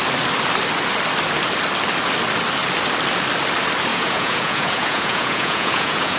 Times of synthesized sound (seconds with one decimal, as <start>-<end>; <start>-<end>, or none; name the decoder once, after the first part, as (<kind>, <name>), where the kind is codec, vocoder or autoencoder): 3.9-6.2 (vocoder, Vocos)